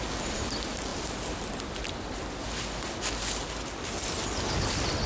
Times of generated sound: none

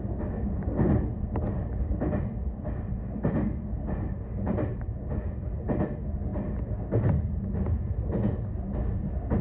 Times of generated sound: none

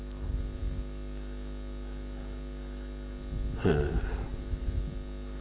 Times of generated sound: none

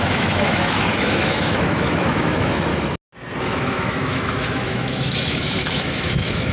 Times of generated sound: 0.0-2.7 (autoencoder, DAC-VAE); 3.4-6.5